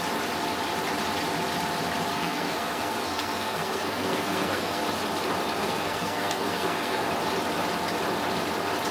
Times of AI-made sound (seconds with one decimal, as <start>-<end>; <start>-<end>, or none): 2.1-4.8; 5.6-7.1